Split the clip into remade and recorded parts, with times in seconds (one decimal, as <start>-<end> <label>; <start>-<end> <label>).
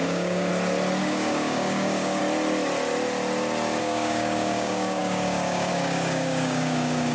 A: 0.0-0.5 remade; 0.5-1.0 recorded; 1.0-2.2 remade; 2.2-3.8 recorded; 3.8-7.1 remade